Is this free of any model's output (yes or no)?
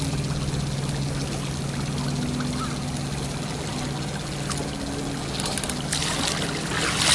yes